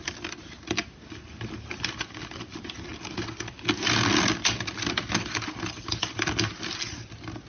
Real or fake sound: real